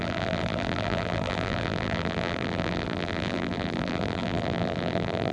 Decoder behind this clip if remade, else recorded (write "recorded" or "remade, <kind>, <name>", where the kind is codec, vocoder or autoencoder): remade, vocoder, BigVGAN v2